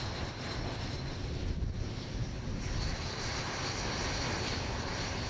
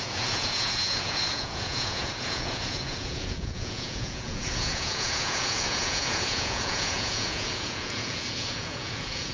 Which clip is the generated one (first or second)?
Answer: second